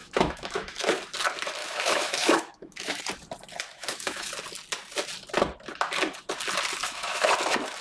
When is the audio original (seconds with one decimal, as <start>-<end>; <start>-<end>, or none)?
1.0-1.6; 3.0-3.7; 4.3-6.8; 7.3-7.8